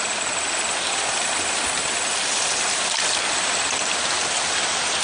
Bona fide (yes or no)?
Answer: yes